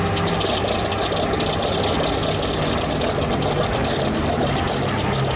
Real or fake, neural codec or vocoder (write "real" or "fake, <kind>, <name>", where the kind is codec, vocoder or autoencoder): real